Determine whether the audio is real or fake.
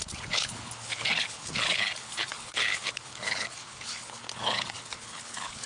fake